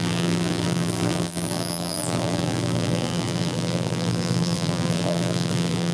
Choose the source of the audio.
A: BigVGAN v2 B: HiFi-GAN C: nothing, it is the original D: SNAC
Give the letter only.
A